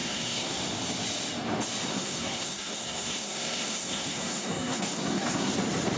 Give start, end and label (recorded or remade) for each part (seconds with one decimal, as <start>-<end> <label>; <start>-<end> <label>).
0.0-0.6 remade; 0.6-1.9 recorded; 1.9-5.5 remade; 5.5-6.0 recorded